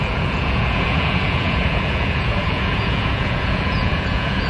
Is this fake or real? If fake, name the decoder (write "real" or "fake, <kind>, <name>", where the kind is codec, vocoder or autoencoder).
fake, vocoder, Vocos